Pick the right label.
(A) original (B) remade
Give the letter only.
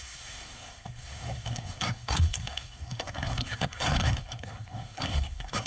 B